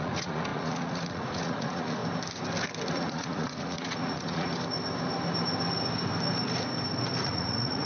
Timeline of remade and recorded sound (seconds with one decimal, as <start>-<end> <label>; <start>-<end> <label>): 0.0-2.0 remade; 2.0-2.9 recorded; 2.9-4.5 remade; 4.5-7.2 recorded; 7.2-7.9 remade